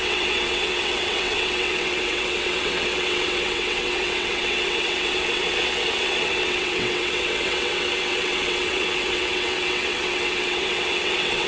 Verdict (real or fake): fake